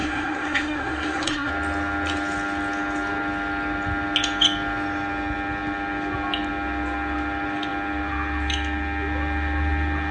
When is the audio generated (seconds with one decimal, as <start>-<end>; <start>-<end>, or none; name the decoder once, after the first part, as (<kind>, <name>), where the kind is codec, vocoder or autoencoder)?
0.0-1.5 (codec, SNAC)